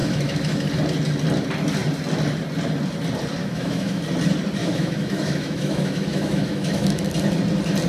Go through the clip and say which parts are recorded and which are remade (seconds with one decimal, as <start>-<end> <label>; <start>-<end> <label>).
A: 0.0-0.7 remade; 0.7-3.4 recorded; 3.4-4.0 remade; 4.0-4.6 recorded; 4.6-7.1 remade; 7.1-7.9 recorded